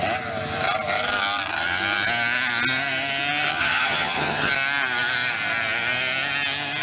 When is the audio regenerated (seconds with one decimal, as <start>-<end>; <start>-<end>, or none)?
3.6-4.5